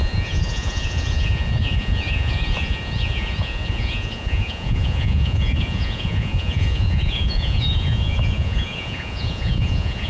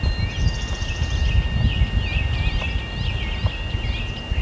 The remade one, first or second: first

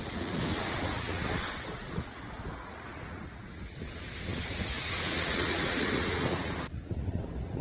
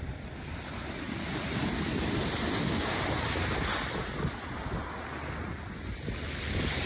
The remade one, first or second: first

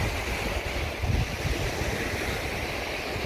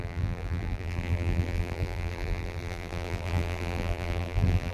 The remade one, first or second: second